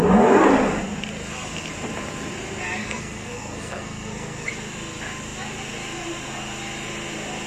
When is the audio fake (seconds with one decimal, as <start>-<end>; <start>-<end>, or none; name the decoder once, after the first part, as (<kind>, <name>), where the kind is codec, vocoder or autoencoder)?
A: 2.8-4.5 (codec, SNAC)